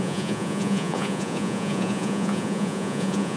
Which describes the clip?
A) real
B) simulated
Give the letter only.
B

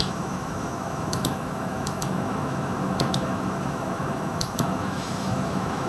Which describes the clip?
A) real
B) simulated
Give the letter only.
B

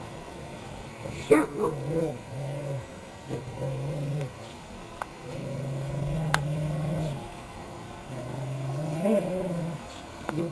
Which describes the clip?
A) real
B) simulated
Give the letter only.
B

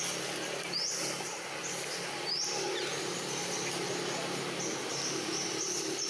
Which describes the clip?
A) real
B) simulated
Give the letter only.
A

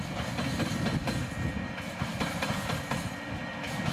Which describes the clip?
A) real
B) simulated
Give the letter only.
A